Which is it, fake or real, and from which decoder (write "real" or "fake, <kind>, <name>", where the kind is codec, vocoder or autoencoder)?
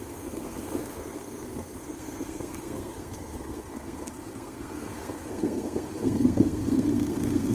fake, codec, SNAC